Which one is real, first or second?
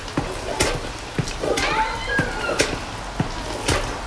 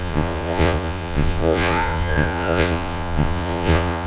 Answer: first